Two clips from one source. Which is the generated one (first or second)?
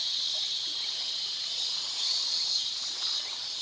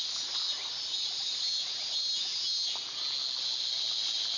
first